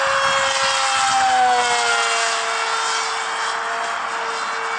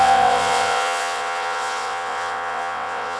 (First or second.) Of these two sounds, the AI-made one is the second